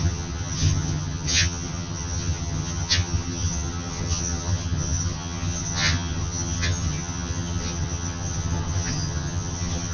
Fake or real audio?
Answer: fake